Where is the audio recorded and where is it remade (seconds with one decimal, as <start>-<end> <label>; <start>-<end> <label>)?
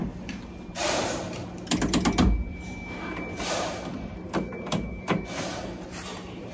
0.0-1.2 remade; 1.2-2.5 recorded; 2.5-6.5 remade